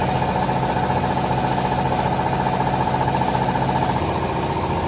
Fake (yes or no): no